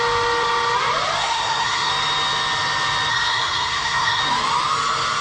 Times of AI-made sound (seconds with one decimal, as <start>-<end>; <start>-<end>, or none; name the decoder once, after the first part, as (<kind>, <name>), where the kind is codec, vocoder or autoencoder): 1.2-1.9 (codec, SNAC); 3.1-4.2